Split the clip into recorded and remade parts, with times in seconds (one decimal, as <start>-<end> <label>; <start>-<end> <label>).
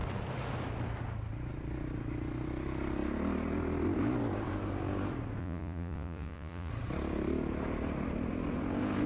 0.0-5.4 recorded; 5.4-6.7 remade; 6.7-9.1 recorded